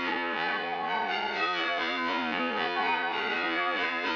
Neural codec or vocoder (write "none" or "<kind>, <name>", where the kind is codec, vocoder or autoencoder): vocoder, Vocos